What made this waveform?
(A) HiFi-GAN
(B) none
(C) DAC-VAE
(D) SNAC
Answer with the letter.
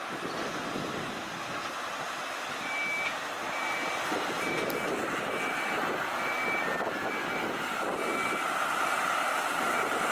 B